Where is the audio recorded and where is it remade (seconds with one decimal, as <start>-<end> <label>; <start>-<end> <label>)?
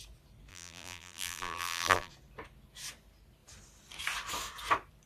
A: 0.0-0.5 recorded; 0.5-2.1 remade; 2.1-5.1 recorded